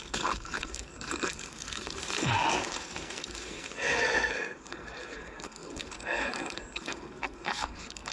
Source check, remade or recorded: remade